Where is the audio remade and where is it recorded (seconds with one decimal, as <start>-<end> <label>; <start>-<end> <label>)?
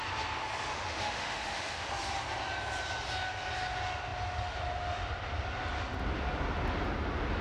0.0-0.7 recorded; 0.7-1.9 remade; 1.9-7.4 recorded